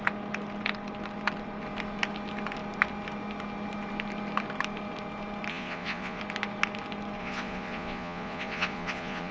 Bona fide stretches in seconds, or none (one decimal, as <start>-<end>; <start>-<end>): 0.0-5.5; 6.2-7.2